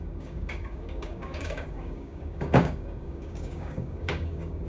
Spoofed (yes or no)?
yes